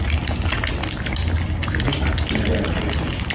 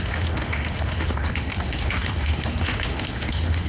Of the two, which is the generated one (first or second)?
second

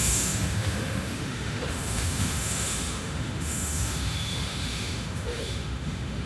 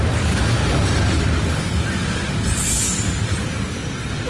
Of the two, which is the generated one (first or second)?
first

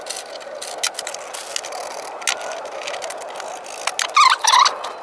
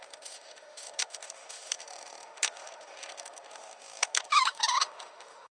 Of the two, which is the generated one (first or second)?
second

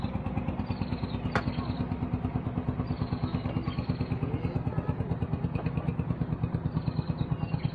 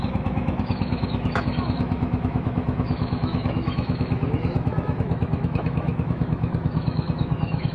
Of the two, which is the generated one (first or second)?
second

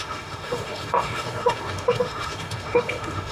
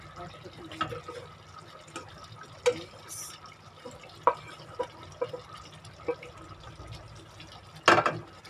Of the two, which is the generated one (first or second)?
first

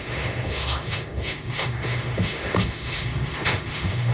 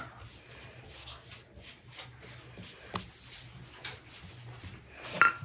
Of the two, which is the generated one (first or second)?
first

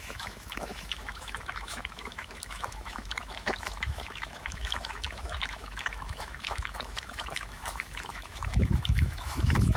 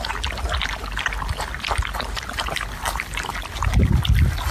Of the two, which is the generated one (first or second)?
first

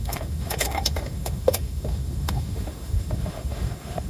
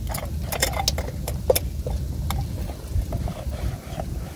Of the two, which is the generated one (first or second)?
first